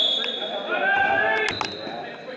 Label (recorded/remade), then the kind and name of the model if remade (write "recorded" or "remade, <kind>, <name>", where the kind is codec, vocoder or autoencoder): recorded